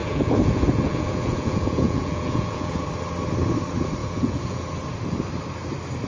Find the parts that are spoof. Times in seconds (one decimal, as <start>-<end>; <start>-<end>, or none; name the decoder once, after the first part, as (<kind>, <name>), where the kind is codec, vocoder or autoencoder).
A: 0.0-2.8 (vocoder, Vocos); 4.0-4.6